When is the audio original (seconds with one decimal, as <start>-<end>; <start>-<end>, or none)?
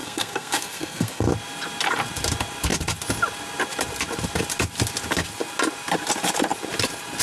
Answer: 1.3-7.2